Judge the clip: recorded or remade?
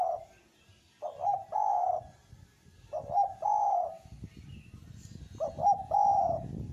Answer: recorded